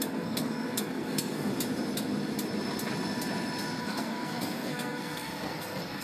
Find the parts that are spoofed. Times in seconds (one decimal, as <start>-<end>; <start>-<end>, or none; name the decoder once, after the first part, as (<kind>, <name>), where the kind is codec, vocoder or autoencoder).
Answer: 0.0-1.5 (codec, SNAC); 3.8-6.0